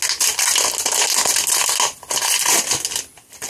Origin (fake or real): real